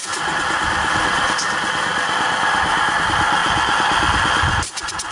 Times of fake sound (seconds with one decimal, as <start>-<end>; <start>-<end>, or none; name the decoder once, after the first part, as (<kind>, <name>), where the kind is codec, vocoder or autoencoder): 0.0-3.0 (vocoder, BigVGAN v2)